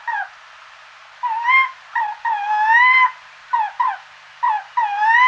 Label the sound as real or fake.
real